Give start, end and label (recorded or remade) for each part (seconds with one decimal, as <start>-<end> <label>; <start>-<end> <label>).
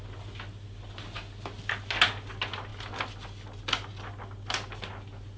0.0-5.4 recorded